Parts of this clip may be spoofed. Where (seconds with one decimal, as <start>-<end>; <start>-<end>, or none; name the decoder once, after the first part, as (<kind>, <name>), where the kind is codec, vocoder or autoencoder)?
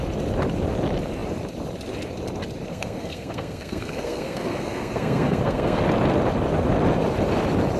2.7-5.8 (codec, SNAC)